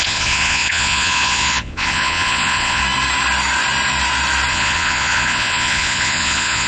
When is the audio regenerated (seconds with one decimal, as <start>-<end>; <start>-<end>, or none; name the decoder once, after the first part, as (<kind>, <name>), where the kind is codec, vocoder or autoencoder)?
0.0-2.8 (vocoder, Vocos); 4.5-6.7